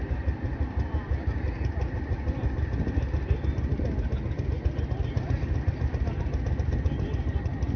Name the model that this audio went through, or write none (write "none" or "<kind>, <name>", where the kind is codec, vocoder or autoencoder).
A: none